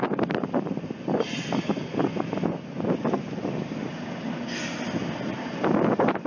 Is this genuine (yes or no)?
yes